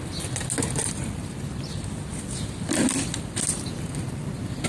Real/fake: real